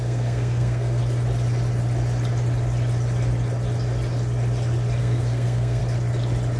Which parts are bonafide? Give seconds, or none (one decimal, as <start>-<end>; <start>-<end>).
1.0-5.0; 5.8-6.6